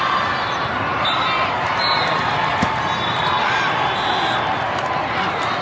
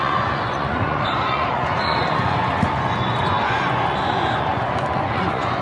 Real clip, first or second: first